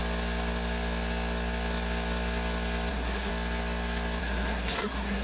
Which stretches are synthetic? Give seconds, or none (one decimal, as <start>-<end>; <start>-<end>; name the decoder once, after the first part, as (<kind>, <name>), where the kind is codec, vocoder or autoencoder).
2.9-3.3 (codec, SNAC); 4.2-5.2